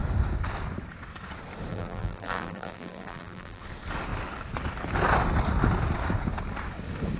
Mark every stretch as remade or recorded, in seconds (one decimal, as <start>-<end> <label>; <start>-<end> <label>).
0.0-1.7 recorded; 1.7-3.6 remade; 3.6-7.2 recorded